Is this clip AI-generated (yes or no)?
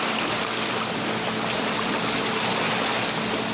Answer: no